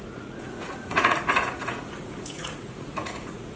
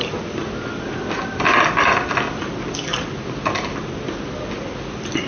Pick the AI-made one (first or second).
first